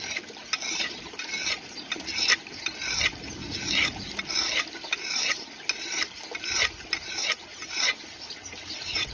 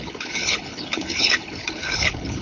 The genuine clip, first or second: first